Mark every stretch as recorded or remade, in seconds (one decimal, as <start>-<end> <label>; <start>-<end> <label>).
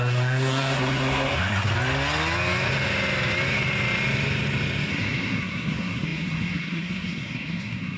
0.0-1.7 remade; 1.7-4.9 recorded; 4.9-8.0 remade